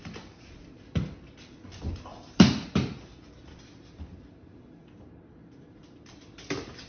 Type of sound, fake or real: real